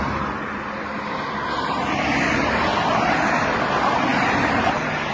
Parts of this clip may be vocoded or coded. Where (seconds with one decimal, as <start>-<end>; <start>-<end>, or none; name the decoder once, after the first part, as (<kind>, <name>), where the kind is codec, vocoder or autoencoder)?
4.1-5.1 (vocoder, BigVGAN v2)